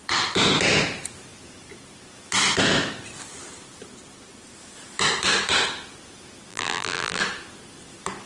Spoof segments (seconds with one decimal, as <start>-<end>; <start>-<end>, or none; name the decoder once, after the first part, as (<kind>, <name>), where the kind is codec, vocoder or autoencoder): 6.5-7.2 (vocoder, BigVGAN v2)